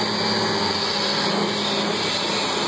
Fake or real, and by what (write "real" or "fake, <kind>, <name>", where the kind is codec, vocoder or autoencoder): real